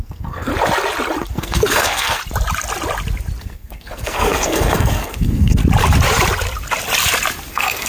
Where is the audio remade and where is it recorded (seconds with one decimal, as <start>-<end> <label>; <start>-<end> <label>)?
0.0-0.5 remade; 0.5-1.3 recorded; 1.3-2.2 remade; 2.2-3.4 recorded; 3.4-5.6 remade; 5.6-7.5 recorded; 7.5-7.9 remade